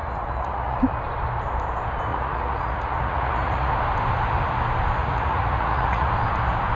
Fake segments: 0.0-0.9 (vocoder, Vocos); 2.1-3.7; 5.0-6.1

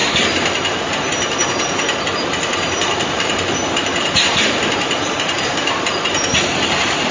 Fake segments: 0.0-2.1 (vocoder, BigVGAN v2); 2.5-7.1

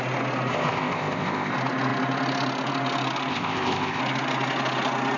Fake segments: 0.5-1.5 (codec, ZipCodec); 3.3-4.0